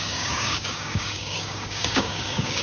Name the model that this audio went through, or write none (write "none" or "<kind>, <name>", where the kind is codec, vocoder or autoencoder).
codec, DAC